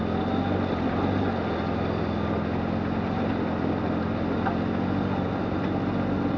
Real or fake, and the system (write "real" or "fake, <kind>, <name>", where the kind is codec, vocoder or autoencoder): real